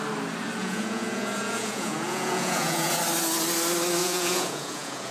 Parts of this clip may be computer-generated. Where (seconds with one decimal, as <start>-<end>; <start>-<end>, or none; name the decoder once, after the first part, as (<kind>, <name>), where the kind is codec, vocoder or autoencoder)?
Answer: 0.6-3.0 (vocoder, Vocos); 4.0-5.1